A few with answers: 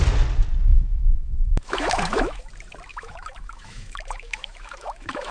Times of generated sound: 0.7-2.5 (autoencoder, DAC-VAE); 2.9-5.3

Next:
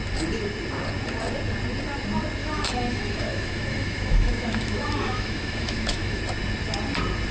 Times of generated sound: 2.4-6.2 (autoencoder, DAC-VAE)

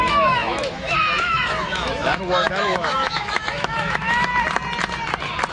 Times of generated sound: 0.0-4.3 (autoencoder, DAC-VAE)